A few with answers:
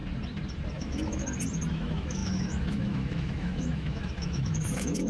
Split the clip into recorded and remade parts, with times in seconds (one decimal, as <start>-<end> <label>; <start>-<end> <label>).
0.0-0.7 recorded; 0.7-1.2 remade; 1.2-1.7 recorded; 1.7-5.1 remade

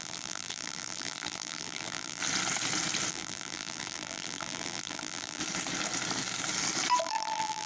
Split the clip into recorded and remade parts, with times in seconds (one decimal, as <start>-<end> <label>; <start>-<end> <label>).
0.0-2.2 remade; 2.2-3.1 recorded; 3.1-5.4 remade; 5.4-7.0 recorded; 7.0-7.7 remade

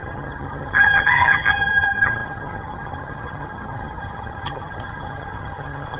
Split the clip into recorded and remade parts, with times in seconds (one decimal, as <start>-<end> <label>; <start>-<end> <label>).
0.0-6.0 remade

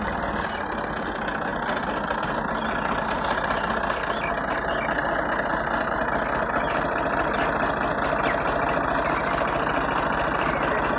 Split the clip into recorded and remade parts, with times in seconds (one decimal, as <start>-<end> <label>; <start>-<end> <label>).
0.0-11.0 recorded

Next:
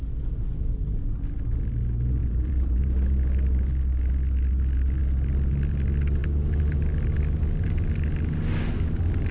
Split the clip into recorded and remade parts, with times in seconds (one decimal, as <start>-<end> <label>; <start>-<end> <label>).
0.0-2.2 recorded; 2.2-2.8 remade; 2.8-9.3 recorded